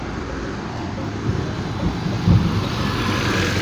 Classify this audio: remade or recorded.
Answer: recorded